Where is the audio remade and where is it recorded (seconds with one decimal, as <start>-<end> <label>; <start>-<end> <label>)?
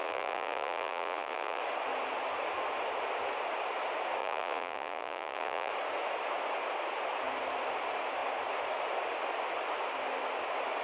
0.0-1.6 remade; 1.6-4.2 recorded; 4.2-5.7 remade; 5.7-10.8 recorded